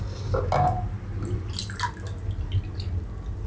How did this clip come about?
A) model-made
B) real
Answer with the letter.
B